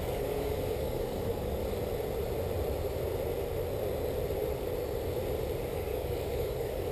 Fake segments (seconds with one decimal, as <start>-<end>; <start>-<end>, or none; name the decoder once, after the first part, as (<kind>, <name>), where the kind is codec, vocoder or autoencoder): 0.0-1.6 (codec, DAC); 5.7-6.9